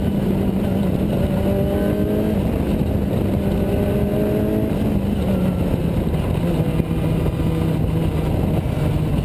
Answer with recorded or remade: recorded